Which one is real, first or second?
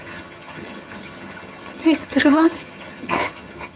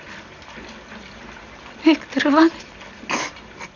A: second